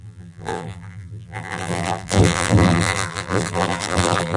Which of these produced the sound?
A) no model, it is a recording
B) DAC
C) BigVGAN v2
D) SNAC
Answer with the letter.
C